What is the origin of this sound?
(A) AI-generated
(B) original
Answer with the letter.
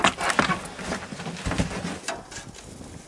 B